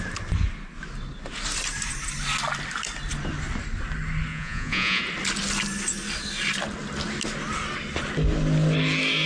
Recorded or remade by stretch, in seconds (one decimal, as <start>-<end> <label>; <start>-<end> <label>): 0.0-4.3 recorded; 4.3-5.0 remade; 5.0-9.3 recorded